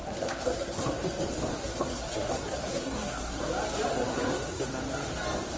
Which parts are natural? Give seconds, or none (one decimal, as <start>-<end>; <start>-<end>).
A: 0.8-1.5; 3.4-4.1; 4.7-5.6